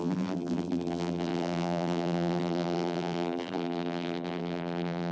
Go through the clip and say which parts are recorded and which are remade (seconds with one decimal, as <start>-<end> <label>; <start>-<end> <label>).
0.0-5.1 remade